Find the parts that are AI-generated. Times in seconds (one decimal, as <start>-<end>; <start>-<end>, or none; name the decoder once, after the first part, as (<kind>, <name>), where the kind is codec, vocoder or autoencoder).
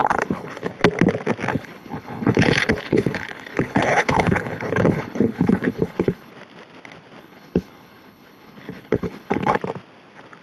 0.0-0.7 (codec, HILCodec); 1.5-6.3; 7.2-9.6